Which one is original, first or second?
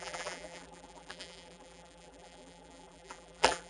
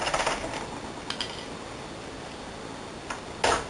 second